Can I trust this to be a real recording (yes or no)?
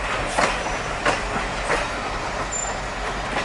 yes